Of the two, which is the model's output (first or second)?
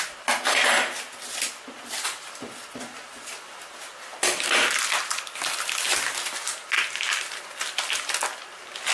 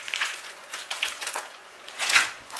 second